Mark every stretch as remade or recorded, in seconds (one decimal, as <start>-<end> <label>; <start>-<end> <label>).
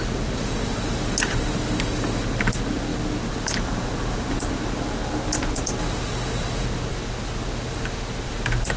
0.0-8.8 recorded